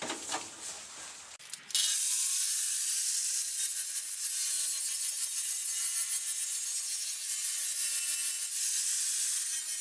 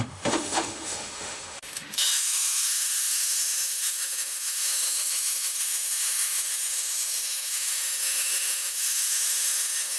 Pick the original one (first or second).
first